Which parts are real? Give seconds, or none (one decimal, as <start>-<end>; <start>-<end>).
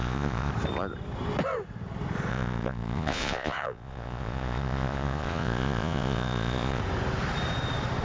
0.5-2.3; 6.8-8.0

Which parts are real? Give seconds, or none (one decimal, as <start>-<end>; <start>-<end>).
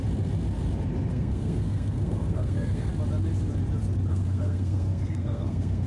0.0-1.1; 2.9-4.1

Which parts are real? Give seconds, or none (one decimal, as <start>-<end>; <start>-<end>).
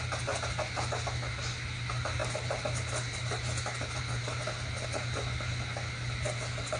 0.0-6.8